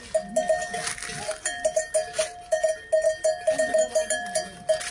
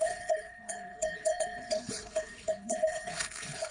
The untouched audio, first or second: first